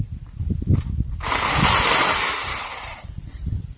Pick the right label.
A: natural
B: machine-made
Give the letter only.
B